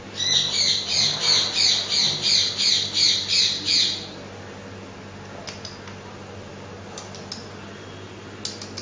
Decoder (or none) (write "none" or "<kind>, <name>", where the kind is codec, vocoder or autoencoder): none